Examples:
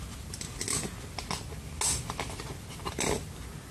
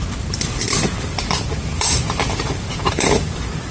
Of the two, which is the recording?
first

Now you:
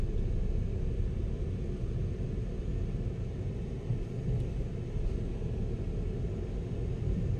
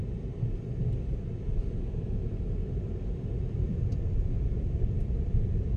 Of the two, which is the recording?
first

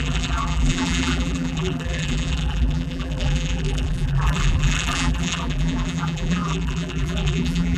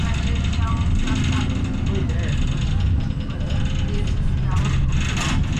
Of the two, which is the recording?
second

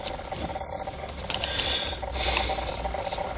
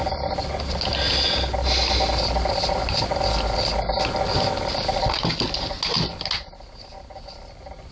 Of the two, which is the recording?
second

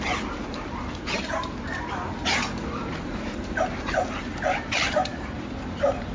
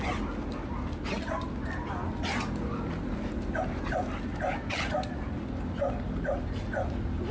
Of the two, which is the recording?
second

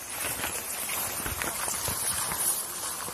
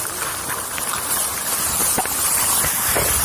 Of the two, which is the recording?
first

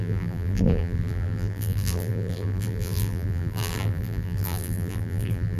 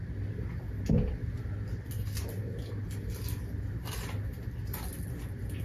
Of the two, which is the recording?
second